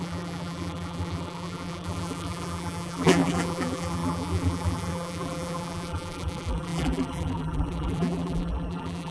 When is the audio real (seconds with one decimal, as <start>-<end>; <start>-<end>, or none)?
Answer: none